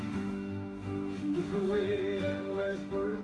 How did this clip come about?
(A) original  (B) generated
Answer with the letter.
B